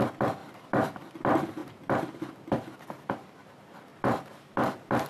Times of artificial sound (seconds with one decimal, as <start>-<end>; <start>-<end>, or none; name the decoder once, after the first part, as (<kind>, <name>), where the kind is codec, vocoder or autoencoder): 0.4-1.1 (vocoder, BigVGAN v2); 1.6-2.7